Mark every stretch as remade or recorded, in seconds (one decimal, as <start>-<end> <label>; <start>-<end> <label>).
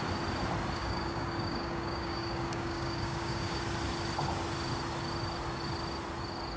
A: 0.0-0.8 recorded; 0.8-3.6 remade; 3.6-6.6 recorded